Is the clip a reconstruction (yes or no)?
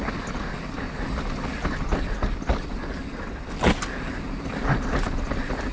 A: no